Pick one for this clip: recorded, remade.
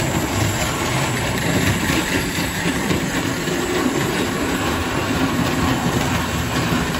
remade